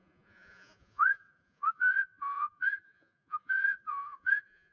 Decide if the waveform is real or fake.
fake